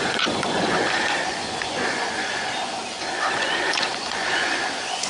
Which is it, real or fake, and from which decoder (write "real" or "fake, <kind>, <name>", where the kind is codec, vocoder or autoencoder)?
fake, vocoder, Vocos